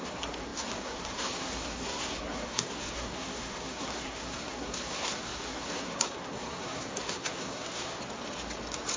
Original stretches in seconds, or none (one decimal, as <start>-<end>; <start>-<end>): 8.0-9.0